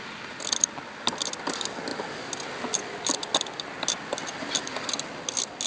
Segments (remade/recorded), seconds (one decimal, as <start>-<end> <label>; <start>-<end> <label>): 0.0-5.7 recorded